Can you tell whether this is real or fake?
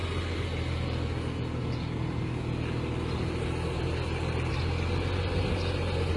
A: real